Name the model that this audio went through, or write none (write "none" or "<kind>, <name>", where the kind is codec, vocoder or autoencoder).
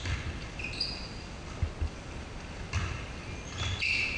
none